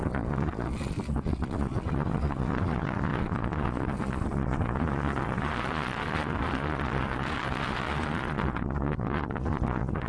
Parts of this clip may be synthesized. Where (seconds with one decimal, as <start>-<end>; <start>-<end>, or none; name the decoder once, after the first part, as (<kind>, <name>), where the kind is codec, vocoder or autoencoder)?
0.0-10.1 (vocoder, Vocos)